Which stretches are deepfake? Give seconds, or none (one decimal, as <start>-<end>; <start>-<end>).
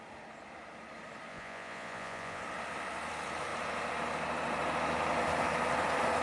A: 1.3-2.4